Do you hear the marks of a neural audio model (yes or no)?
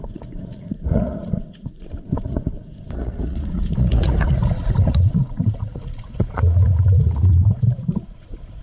yes